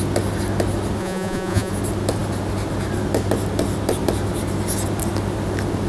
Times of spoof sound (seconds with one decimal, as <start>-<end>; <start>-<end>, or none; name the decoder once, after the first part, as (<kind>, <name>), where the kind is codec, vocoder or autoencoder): 1.0-1.7 (vocoder, Vocos)